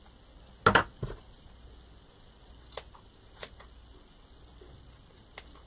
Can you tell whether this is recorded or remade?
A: recorded